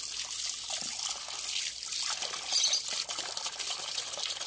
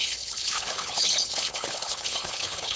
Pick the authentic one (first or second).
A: first